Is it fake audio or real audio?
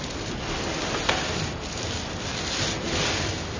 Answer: real